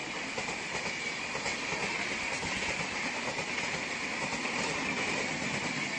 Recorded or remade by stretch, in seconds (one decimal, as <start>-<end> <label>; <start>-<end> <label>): 0.0-6.0 recorded